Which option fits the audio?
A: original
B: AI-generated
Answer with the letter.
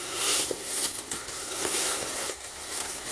B